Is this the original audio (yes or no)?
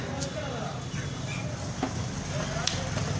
yes